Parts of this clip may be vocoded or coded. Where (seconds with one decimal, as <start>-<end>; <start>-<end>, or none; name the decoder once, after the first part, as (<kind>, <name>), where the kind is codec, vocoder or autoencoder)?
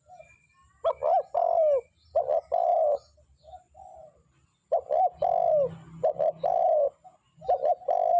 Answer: none